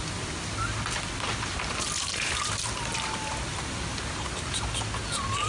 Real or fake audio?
real